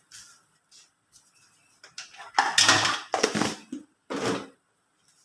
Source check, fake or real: real